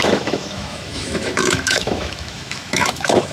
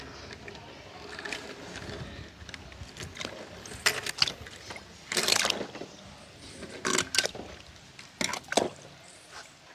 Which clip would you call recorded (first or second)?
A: second